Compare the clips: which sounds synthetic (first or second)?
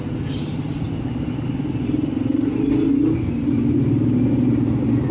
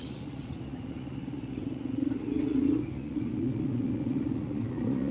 second